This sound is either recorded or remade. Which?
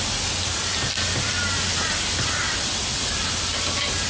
recorded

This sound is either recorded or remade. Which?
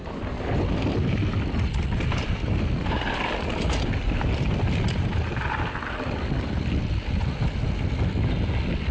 recorded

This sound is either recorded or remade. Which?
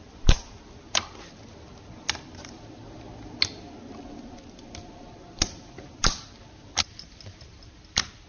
recorded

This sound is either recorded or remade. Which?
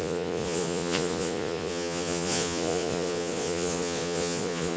remade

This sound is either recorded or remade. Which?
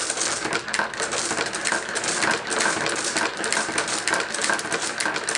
remade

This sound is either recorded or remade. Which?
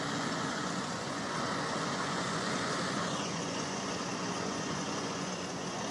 remade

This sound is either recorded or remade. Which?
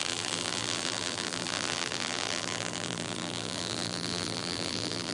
remade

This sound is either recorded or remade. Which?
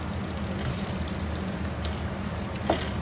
recorded